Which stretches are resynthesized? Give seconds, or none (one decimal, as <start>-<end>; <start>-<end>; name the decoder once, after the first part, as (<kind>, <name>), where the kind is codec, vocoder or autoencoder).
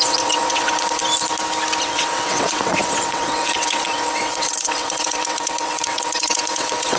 0.0-1.0 (vocoder, WaveNeXt); 1.8-7.0